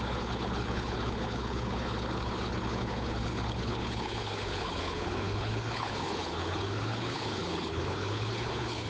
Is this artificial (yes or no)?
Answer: yes